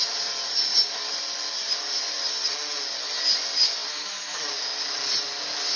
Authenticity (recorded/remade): recorded